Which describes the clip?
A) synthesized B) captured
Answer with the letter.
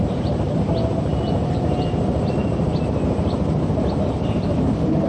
B